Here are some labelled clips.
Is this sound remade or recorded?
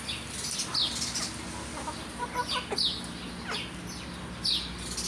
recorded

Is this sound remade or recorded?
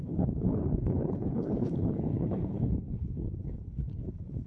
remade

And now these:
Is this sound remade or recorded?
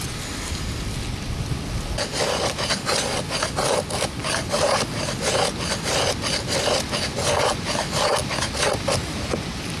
recorded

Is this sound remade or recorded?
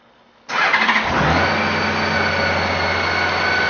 recorded